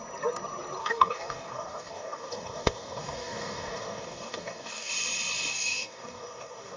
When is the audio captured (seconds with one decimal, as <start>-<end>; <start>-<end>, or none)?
0.0-0.8; 4.9-5.5